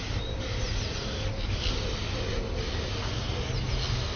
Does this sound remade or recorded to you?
recorded